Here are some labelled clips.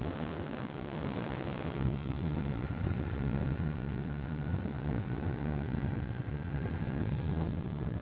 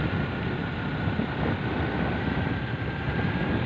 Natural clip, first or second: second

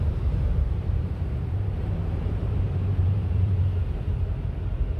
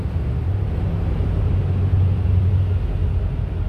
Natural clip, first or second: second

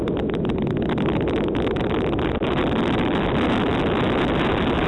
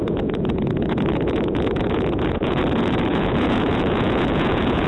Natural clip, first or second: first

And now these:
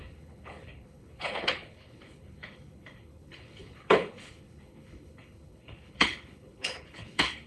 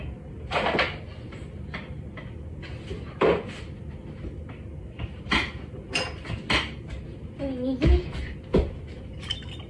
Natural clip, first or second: second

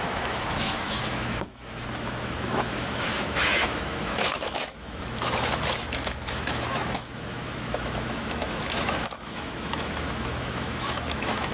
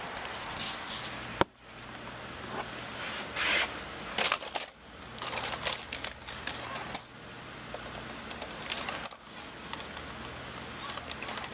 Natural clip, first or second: second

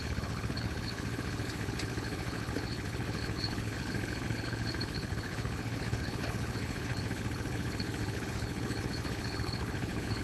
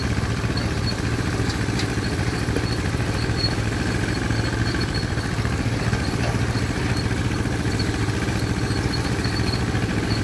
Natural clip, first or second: second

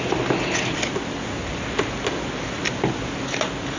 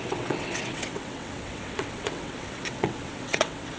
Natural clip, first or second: first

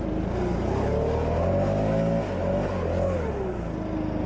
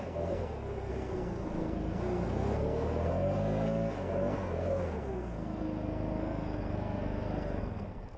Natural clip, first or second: first